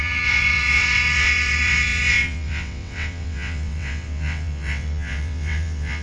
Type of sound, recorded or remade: remade